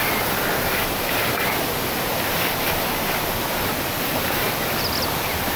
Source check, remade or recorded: remade